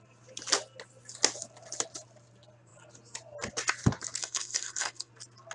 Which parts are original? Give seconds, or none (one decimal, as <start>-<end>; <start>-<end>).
0.0-4.2; 5.1-5.5